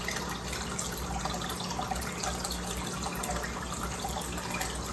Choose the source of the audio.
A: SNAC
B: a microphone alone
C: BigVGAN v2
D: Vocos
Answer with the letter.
B